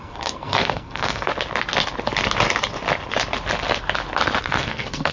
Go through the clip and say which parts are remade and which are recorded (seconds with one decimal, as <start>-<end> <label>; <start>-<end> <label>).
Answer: 0.0-1.3 remade; 1.3-4.4 recorded; 4.4-5.1 remade